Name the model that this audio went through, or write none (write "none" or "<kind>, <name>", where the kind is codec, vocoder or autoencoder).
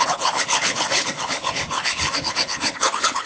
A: codec, HILCodec